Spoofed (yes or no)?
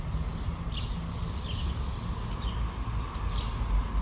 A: no